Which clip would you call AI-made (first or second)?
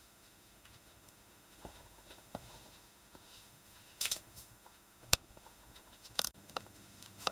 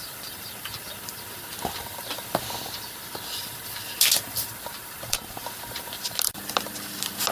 first